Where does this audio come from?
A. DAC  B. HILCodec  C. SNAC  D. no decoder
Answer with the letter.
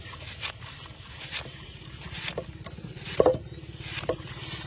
D